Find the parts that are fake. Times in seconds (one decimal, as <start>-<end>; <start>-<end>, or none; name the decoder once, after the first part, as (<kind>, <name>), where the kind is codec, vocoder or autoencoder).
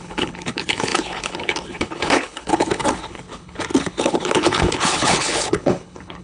0.0-6.2 (codec, HILCodec)